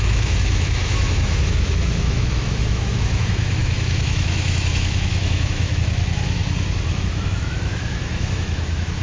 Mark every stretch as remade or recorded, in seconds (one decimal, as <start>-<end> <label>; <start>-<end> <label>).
0.0-6.4 remade; 6.4-6.9 recorded; 6.9-9.0 remade